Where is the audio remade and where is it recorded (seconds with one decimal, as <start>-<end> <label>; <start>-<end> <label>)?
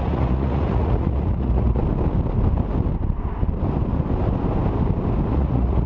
0.0-1.8 remade; 1.8-5.3 recorded; 5.3-5.9 remade